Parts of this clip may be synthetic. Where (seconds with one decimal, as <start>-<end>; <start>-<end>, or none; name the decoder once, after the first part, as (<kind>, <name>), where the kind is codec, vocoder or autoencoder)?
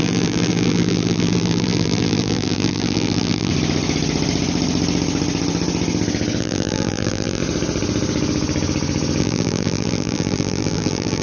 0.0-3.5 (vocoder, BigVGAN v2); 6.4-7.4; 9.2-11.2